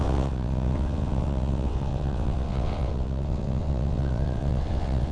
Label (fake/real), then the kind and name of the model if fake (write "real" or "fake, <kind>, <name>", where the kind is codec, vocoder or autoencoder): fake, vocoder, WaveNeXt